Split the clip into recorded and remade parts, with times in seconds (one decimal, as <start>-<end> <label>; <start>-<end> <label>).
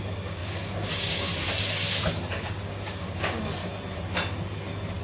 0.0-1.3 remade; 1.3-2.1 recorded; 2.1-3.6 remade; 3.6-5.0 recorded